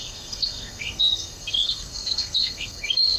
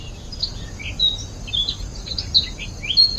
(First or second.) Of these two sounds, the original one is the second